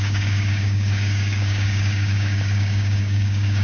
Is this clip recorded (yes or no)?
no